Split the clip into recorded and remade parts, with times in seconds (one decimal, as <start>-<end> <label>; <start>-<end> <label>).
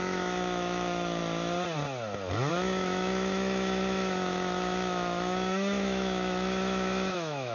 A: 0.0-1.2 remade; 1.2-2.5 recorded; 2.5-7.5 remade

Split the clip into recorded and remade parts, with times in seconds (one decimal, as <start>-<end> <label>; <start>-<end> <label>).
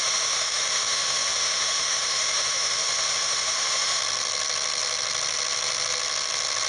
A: 0.0-4.0 remade; 4.0-6.7 recorded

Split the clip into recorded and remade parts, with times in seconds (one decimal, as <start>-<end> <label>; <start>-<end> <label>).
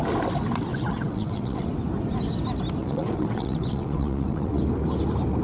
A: 0.0-0.7 recorded; 0.7-1.7 remade; 1.7-2.8 recorded; 2.8-4.6 remade; 4.6-5.4 recorded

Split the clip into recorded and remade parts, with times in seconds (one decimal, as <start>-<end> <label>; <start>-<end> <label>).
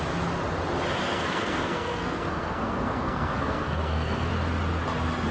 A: 0.0-1.1 recorded; 1.1-4.3 remade; 4.3-5.3 recorded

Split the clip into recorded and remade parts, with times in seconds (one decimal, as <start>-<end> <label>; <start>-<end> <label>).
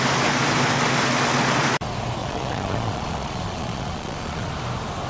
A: 0.0-2.2 recorded; 2.2-4.5 remade; 4.5-5.1 recorded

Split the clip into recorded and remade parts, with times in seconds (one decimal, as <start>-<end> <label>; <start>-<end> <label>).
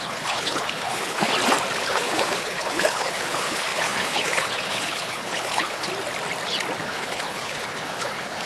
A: 0.0-1.3 remade; 1.3-1.8 recorded; 1.8-5.9 remade; 5.9-6.8 recorded; 6.8-8.5 remade